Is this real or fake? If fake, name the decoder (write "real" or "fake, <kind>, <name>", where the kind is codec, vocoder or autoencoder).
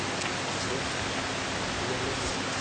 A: real